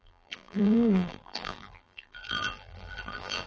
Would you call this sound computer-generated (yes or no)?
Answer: yes